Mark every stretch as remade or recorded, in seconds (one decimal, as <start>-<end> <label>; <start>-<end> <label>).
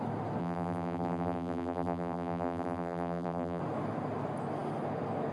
0.0-0.4 recorded; 0.4-3.6 remade; 3.6-5.3 recorded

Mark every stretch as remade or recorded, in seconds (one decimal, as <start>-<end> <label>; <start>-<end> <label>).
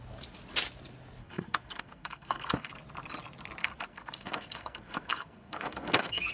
0.0-1.2 recorded; 1.2-2.7 remade; 2.7-3.6 recorded; 3.6-6.3 remade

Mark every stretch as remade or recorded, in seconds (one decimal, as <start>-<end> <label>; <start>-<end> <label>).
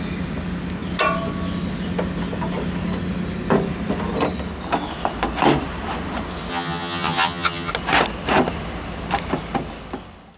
0.0-6.5 recorded; 6.5-7.7 remade; 7.7-10.4 recorded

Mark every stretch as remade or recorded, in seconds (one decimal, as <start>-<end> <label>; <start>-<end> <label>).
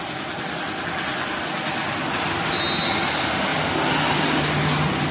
0.0-5.1 recorded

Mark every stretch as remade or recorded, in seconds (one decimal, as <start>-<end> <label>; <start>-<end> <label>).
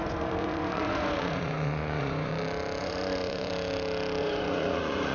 0.0-2.3 remade; 2.3-2.8 recorded; 2.8-3.5 remade; 3.5-4.2 recorded; 4.2-5.1 remade